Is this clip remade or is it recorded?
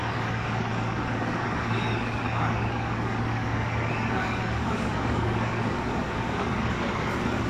remade